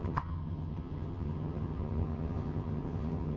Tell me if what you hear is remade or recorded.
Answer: remade